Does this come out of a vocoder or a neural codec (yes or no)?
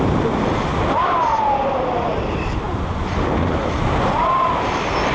no